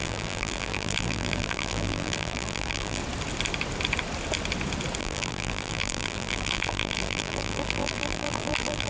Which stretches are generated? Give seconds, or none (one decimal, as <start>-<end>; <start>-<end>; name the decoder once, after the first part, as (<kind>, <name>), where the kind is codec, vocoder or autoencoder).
0.0-3.0 (vocoder, BigVGAN v2); 5.0-8.9